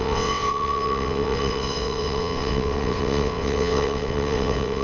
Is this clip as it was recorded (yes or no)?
no